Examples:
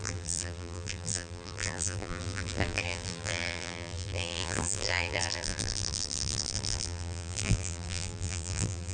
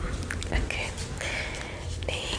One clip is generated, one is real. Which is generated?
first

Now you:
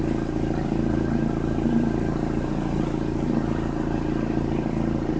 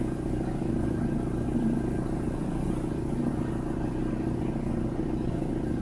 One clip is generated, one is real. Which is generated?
second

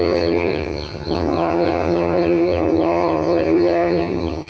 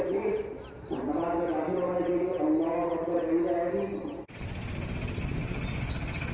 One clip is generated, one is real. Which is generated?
first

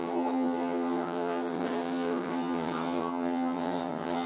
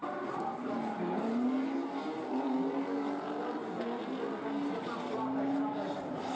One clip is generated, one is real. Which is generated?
first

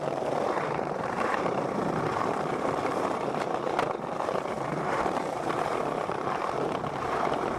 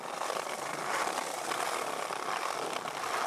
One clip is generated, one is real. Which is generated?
first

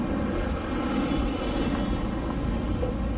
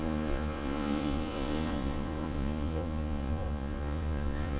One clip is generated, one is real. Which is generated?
second